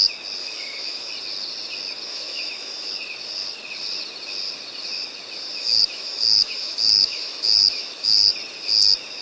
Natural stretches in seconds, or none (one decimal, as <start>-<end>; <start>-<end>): 0.0-0.4; 1.1-2.1; 2.9-5.6; 8.3-9.2